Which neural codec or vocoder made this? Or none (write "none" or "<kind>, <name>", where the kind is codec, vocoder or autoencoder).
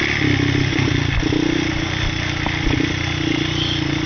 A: none